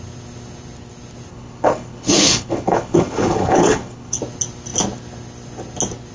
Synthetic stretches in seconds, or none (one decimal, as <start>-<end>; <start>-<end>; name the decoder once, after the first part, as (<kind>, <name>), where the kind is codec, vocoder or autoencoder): 1.3-4.2 (codec, HILCodec)